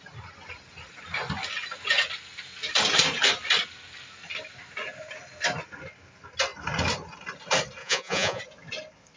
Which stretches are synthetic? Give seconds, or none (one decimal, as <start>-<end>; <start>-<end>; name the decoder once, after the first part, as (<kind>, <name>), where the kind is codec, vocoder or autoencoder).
7.8-8.4 (vocoder, Vocos)